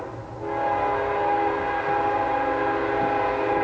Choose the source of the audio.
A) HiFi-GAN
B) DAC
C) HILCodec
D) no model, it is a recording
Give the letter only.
D